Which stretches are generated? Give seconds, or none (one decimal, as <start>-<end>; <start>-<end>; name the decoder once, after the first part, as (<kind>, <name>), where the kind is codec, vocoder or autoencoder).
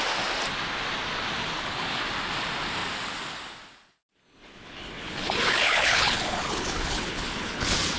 1.4-2.0 (codec, HILCodec); 4.2-8.0